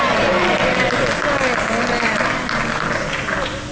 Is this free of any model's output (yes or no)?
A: yes